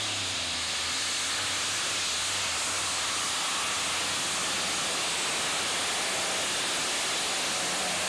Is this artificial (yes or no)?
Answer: no